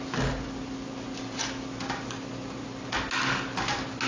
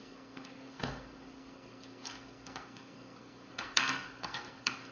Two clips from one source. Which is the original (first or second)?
first